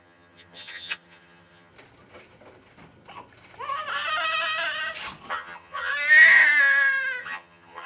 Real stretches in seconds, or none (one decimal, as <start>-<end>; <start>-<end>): 1.7-5.3; 5.9-7.2

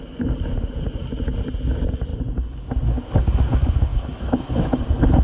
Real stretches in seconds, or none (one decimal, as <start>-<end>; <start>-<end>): 0.0-3.9; 4.8-5.2

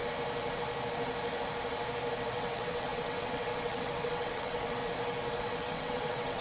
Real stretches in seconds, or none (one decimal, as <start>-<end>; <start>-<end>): 0.0-2.3; 4.8-5.4

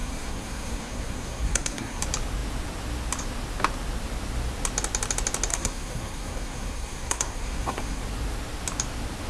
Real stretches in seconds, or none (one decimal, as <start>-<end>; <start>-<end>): 2.0-5.5; 8.0-9.3

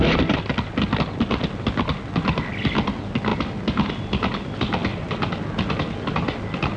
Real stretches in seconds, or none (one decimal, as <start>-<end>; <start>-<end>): 0.0-6.8

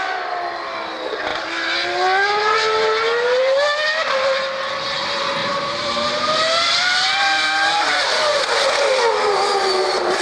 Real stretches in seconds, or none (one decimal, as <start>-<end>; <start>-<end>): 0.0-5.4; 8.4-10.2

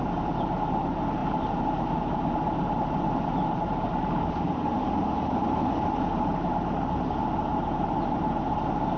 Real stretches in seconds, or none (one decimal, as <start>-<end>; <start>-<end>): 0.0-1.2; 6.0-7.5; 8.2-9.0